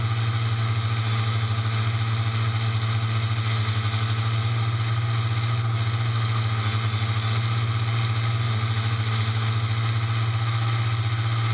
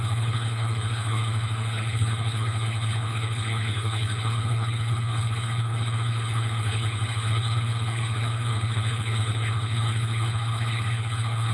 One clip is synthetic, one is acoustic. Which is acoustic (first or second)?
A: first